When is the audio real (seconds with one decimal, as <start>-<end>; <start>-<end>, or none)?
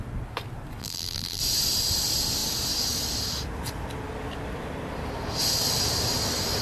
0.0-0.8; 1.4-6.6